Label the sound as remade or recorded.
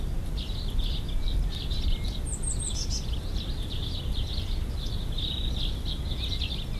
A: recorded